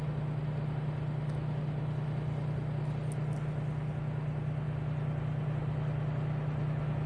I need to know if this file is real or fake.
real